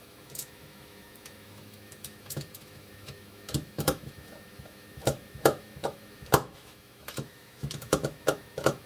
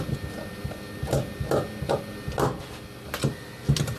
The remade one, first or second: first